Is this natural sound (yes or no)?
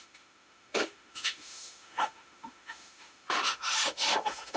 no